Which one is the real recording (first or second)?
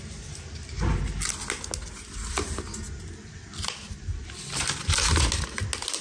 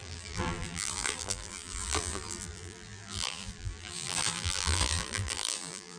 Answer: first